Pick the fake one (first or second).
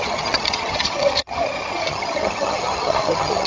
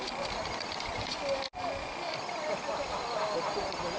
first